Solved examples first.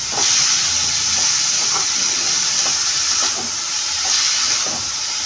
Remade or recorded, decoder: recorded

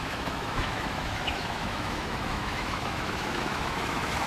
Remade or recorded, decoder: remade, autoencoder, DAC-VAE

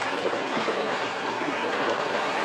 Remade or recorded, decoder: remade, codec, SNAC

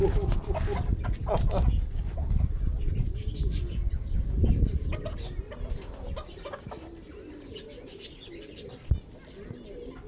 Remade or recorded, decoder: recorded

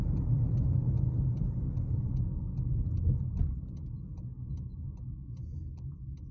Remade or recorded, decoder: recorded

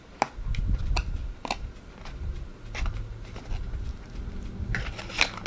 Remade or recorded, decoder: recorded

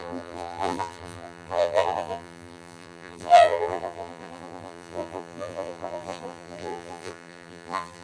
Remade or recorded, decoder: remade, vocoder, BigVGAN v2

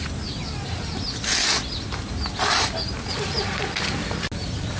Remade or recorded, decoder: recorded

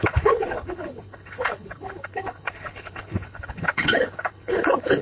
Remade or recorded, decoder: remade, codec, HILCodec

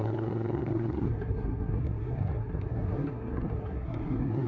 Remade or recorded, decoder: remade, codec, SNAC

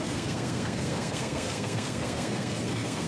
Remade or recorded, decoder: remade, codec, SNAC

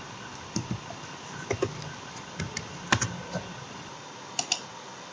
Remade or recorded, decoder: recorded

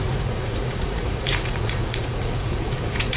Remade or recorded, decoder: remade, vocoder, Vocos